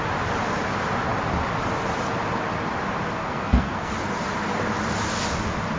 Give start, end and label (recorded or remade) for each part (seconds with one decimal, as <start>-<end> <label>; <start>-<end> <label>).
0.0-3.2 recorded; 3.2-3.9 remade; 3.9-5.8 recorded